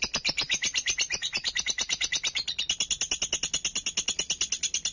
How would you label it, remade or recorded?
recorded